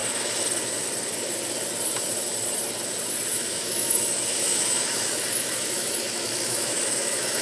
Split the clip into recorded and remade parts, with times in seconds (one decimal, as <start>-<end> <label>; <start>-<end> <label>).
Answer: 0.0-3.3 recorded; 3.3-7.4 remade